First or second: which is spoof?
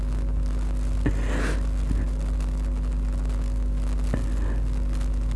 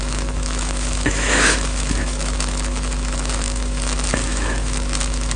second